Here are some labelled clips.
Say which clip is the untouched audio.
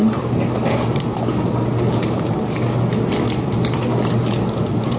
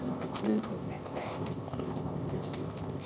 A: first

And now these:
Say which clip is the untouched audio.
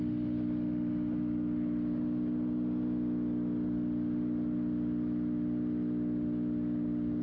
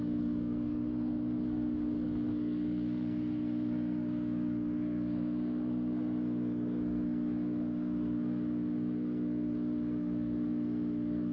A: first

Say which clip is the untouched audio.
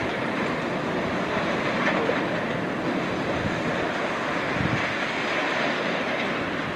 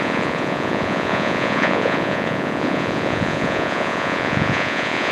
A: first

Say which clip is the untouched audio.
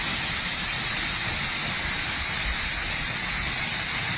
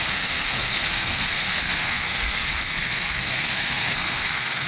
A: first